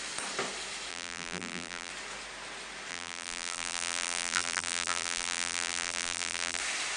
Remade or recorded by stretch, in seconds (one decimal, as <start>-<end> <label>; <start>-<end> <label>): 0.0-0.9 recorded; 0.9-1.9 remade; 1.9-2.9 recorded; 2.9-6.6 remade; 6.6-7.0 recorded

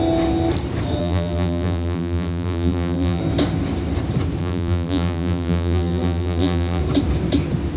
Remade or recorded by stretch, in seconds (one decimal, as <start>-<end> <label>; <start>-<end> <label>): 0.0-1.0 recorded; 1.0-3.2 remade; 3.2-4.4 recorded; 4.4-6.8 remade; 6.8-7.8 recorded

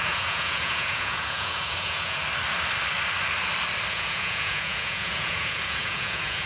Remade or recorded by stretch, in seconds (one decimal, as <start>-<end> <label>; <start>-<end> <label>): 0.0-2.2 remade; 2.2-3.9 recorded; 3.9-6.5 remade

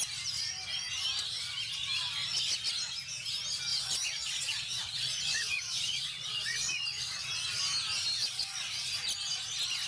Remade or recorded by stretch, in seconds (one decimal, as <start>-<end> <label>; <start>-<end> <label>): 0.0-3.7 recorded; 3.7-7.3 remade; 7.3-8.2 recorded; 8.2-8.9 remade; 8.9-9.9 recorded

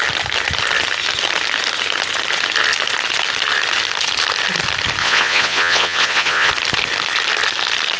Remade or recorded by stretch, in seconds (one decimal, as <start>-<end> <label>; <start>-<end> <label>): 0.0-5.0 recorded; 5.0-6.5 remade; 6.5-8.0 recorded

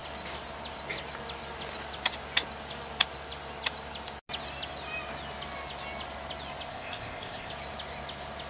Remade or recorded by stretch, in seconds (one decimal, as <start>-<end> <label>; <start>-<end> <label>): 0.0-6.7 recorded; 6.7-7.5 remade; 7.5-8.5 recorded

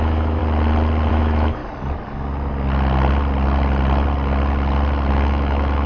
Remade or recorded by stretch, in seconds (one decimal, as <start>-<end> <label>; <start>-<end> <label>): 0.0-0.4 remade; 0.4-1.1 recorded; 1.1-1.6 remade; 1.6-5.1 recorded; 5.1-5.9 remade